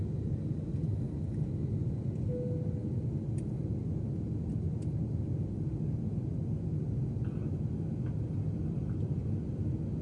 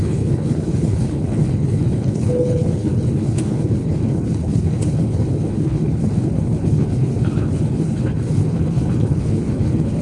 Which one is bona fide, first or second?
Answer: first